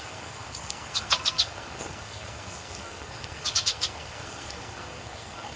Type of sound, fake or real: fake